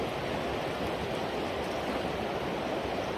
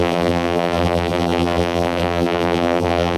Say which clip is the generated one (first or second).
second